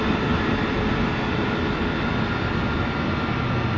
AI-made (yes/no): no